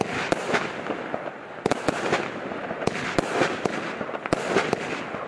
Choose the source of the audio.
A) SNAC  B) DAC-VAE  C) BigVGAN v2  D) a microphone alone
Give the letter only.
D